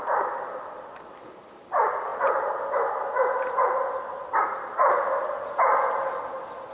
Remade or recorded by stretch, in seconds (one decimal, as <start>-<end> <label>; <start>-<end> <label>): 0.0-6.7 recorded